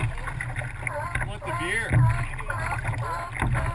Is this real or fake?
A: real